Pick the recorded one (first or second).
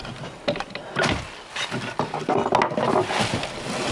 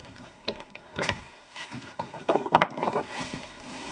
first